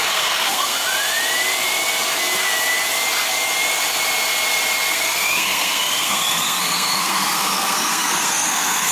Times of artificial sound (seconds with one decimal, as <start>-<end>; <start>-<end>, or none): 0.0-0.8; 4.9-8.9